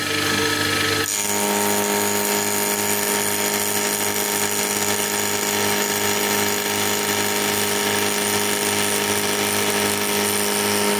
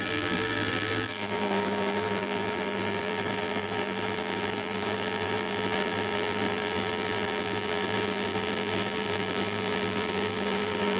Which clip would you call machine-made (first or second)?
second